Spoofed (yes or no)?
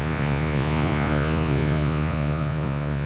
yes